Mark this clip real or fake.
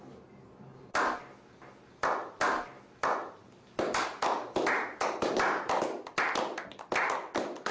real